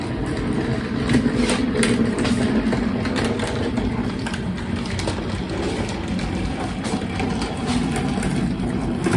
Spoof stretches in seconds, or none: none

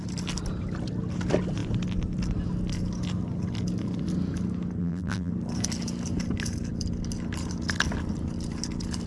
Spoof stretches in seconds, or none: 4.8-5.3 (vocoder, BigVGAN v2)

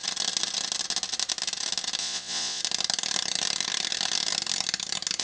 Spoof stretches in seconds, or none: 2.0-2.6 (vocoder, Vocos)